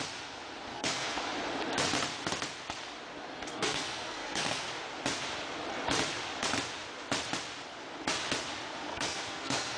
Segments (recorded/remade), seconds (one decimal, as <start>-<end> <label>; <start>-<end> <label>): 0.0-0.7 recorded; 0.7-1.2 remade; 1.2-3.5 recorded; 3.5-4.7 remade; 4.7-8.9 recorded; 8.9-9.8 remade